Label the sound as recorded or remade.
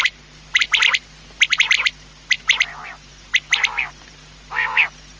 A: remade